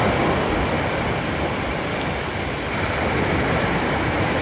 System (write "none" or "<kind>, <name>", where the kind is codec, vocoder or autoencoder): none